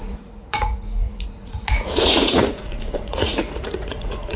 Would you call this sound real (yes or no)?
no